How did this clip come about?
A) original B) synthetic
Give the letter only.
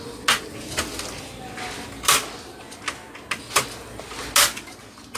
A